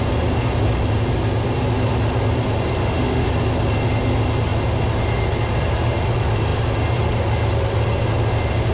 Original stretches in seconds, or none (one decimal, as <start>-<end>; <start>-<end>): 0.0-2.8; 3.3-8.7